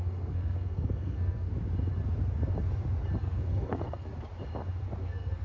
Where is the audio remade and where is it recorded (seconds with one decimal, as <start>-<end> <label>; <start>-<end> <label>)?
0.0-1.5 remade; 1.5-3.2 recorded; 3.2-4.1 remade; 4.1-5.0 recorded; 5.0-5.4 remade